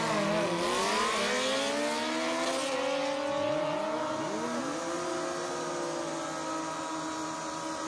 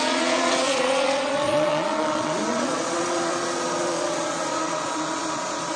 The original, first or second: first